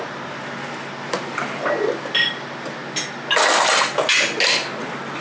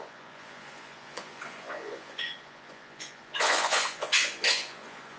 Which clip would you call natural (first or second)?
first